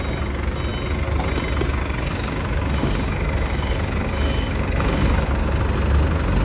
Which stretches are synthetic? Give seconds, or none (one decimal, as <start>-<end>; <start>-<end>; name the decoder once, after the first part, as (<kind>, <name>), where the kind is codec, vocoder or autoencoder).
1.8-5.6 (codec, DAC)